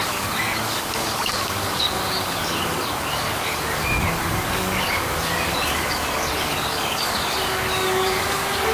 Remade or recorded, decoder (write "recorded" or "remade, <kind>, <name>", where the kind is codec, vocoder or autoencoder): remade, codec, DAC